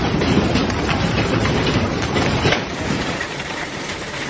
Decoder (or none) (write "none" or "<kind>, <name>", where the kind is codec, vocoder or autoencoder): vocoder, BigVGAN v2